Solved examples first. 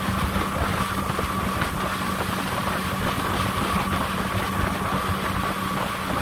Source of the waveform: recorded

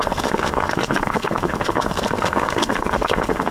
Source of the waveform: remade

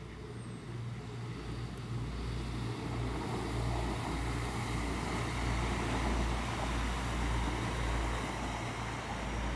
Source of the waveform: recorded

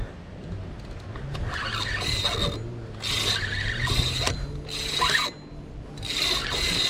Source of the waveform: recorded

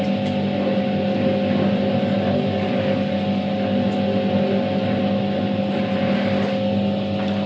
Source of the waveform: recorded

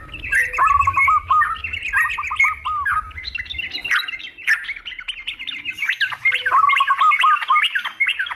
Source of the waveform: recorded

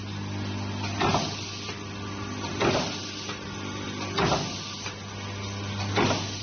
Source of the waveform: recorded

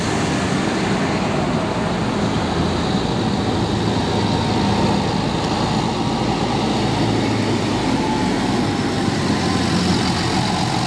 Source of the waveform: recorded